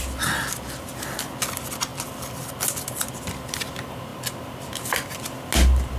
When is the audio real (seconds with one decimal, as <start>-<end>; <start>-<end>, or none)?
0.0-6.0